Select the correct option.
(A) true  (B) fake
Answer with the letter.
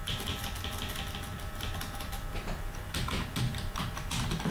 B